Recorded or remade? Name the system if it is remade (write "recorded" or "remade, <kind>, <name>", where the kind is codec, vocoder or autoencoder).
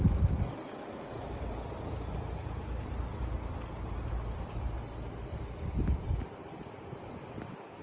recorded